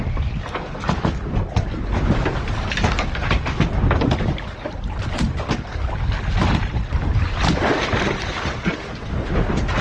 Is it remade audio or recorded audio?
recorded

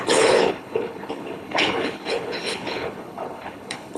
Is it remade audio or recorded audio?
remade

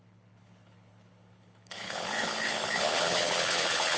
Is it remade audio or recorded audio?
remade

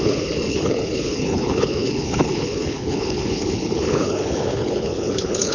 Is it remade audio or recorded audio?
remade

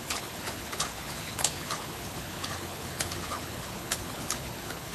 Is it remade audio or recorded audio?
remade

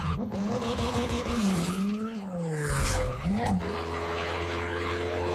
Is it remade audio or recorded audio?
remade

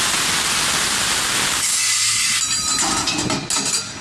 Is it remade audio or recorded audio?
recorded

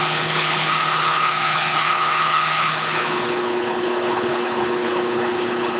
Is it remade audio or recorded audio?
remade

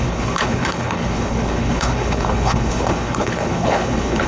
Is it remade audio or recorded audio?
remade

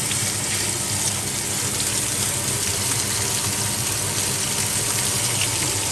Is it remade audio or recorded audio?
recorded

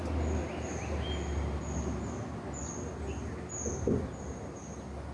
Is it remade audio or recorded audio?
recorded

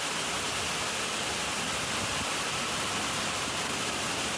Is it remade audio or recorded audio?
recorded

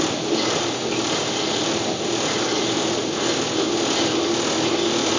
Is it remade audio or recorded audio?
recorded